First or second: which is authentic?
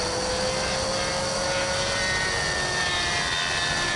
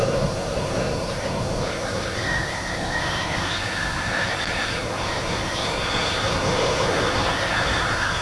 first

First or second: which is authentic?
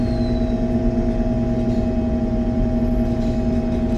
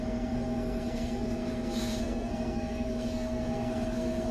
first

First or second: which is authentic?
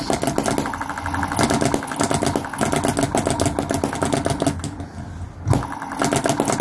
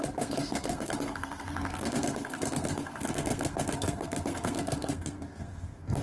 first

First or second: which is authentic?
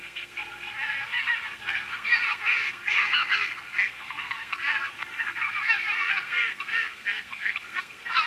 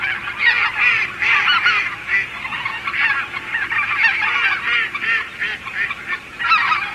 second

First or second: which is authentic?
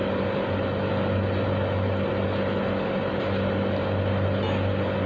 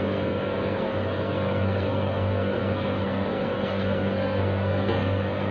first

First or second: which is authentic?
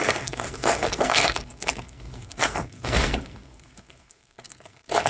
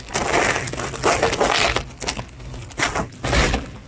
second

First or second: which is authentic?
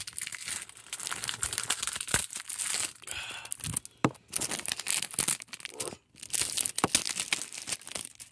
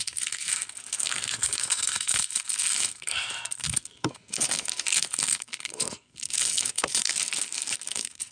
first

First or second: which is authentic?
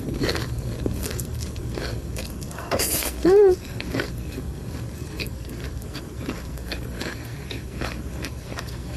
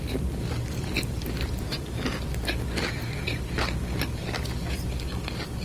second